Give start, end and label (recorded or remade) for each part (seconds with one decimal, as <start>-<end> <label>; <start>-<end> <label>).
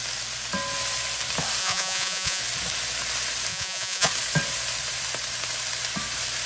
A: 0.0-1.6 recorded; 1.6-2.4 remade; 2.4-3.5 recorded; 3.5-4.1 remade; 4.1-6.5 recorded